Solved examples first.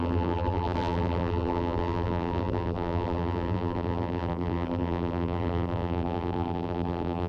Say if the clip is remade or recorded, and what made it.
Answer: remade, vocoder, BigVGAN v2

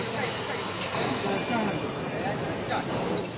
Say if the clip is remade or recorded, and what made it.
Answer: recorded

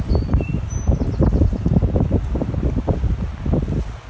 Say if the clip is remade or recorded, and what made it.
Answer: recorded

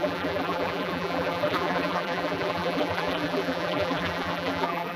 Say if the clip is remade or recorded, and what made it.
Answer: remade, vocoder, BigVGAN v2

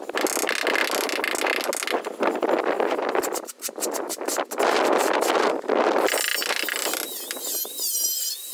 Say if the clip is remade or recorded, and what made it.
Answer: recorded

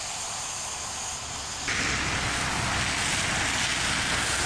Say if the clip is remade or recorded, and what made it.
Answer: recorded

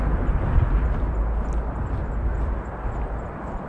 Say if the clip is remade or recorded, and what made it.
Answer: recorded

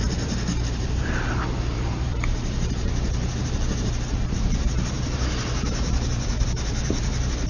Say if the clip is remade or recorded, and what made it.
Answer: remade, vocoder, BigVGAN v2